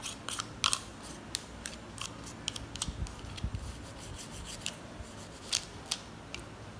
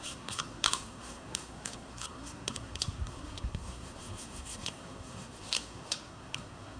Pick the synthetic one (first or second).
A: second